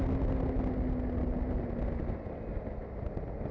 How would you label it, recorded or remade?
recorded